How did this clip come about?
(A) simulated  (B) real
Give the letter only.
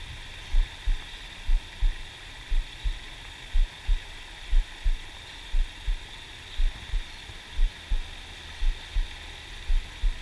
B